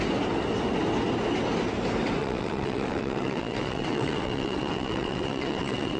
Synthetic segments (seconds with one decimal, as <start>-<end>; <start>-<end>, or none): 2.2-6.0